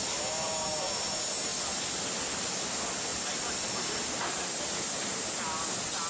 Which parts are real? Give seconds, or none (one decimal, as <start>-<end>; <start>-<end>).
0.0-6.1